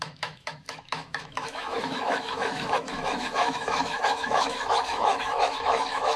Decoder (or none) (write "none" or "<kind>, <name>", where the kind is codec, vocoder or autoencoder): autoencoder, DAC-VAE